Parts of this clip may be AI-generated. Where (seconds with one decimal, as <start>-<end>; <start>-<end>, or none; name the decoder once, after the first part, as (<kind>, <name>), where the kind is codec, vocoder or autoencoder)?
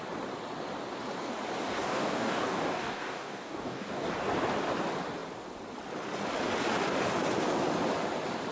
1.7-4.1 (codec, DAC)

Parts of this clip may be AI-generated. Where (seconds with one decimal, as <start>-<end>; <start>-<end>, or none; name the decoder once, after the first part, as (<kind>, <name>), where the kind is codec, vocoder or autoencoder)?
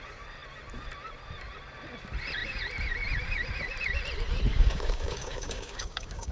4.5-6.3 (codec, DAC)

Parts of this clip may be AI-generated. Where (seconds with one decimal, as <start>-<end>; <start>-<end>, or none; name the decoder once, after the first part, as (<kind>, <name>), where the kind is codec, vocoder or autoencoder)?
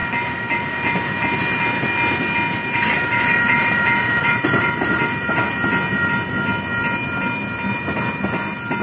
0.0-0.6 (vocoder, BigVGAN v2); 2.6-5.4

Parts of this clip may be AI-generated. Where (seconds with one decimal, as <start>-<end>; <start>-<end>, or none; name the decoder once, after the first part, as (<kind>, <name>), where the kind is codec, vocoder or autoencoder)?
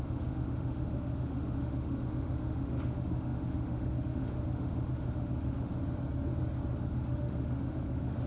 0.0-5.7 (autoencoder, DAC-VAE); 6.8-8.3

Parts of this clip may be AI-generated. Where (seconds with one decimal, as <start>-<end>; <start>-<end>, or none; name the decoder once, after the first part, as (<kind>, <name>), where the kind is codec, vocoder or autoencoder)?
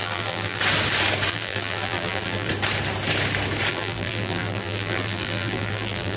0.0-0.6 (vocoder, BigVGAN v2); 1.3-2.5; 3.7-6.2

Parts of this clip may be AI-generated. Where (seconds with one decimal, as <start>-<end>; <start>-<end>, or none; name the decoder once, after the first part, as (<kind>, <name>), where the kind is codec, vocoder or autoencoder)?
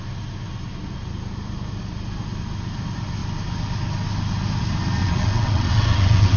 5.0-6.4 (vocoder, WaveNeXt)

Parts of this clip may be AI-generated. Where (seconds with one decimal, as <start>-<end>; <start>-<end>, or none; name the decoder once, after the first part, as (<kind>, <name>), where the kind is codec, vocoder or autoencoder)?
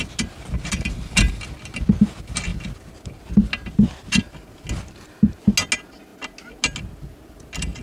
none